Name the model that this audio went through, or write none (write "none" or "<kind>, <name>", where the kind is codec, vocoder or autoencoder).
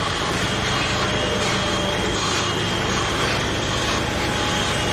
none